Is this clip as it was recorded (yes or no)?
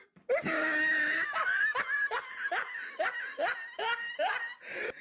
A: yes